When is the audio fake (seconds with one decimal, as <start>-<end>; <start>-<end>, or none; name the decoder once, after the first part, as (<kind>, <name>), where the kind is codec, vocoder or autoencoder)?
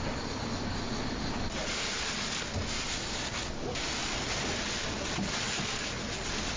none